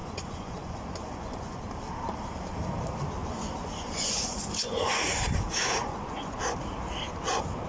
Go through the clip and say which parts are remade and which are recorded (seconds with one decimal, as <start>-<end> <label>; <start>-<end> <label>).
0.0-1.6 remade; 1.6-3.2 recorded; 3.2-5.0 remade; 5.0-5.8 recorded; 5.8-6.4 remade; 6.4-7.7 recorded